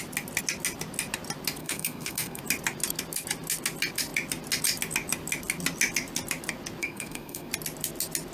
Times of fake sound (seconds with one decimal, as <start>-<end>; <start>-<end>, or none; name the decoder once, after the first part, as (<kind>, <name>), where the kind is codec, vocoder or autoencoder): 1.6-2.4 (codec, SNAC); 6.8-7.5